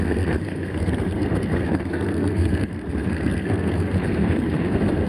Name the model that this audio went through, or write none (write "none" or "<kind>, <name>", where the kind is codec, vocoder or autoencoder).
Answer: codec, SNAC